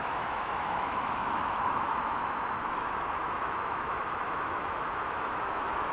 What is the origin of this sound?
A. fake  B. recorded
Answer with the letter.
A